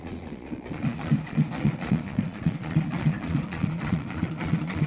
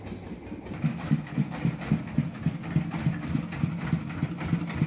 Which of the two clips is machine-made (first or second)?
first